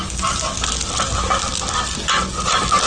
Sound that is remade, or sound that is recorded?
recorded